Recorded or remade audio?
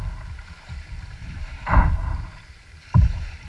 remade